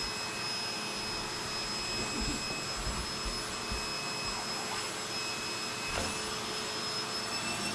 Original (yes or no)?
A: yes